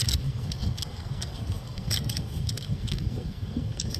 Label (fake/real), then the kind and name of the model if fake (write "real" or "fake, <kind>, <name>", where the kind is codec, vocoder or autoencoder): fake, codec, SNAC